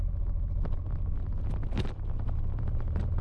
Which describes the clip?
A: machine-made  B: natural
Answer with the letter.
B